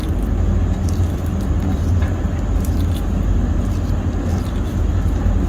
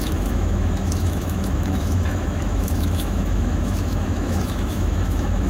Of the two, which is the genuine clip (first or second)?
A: first